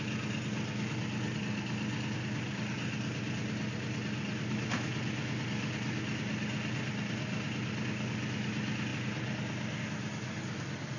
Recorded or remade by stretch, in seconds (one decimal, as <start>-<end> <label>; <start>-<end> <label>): 0.0-11.0 recorded